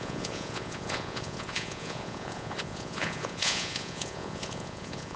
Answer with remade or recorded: remade